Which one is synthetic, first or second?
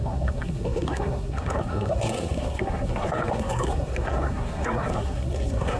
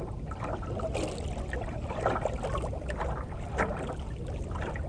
first